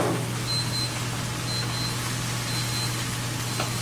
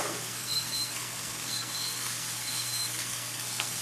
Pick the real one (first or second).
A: first